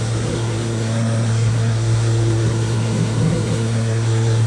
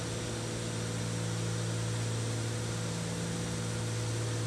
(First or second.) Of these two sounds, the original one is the second